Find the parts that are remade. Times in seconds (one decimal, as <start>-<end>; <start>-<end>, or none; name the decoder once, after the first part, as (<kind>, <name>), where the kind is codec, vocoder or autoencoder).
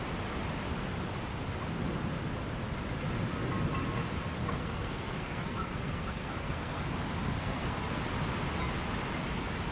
4.4-6.9 (codec, SNAC); 7.4-8.0